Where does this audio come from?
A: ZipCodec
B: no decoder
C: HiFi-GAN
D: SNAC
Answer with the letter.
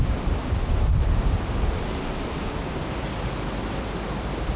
B